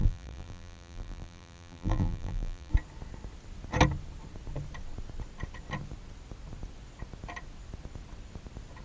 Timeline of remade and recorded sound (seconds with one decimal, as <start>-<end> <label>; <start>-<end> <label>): 0.0-2.7 remade; 2.7-8.8 recorded